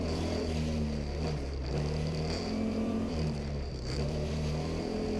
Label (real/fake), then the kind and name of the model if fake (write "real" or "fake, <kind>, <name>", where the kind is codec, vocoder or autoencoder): fake, vocoder, BigVGAN v2